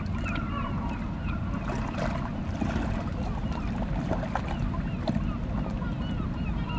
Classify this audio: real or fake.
real